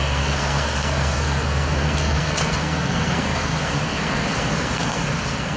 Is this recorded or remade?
remade